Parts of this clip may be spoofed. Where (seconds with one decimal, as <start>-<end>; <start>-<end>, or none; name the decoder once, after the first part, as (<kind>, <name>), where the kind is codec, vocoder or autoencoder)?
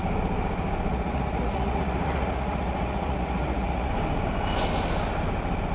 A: 0.9-3.9 (vocoder, Vocos)